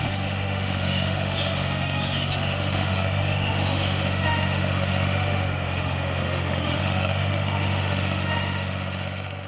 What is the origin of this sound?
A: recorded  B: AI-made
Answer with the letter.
B